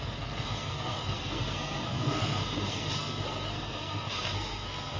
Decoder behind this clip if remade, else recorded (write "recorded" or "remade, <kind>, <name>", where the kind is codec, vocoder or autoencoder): remade, codec, SNAC